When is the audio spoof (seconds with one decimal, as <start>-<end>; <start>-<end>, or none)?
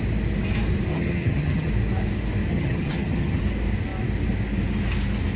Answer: 0.9-1.7; 2.5-3.4